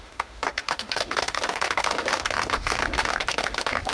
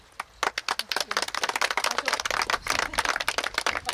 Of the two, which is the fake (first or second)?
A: first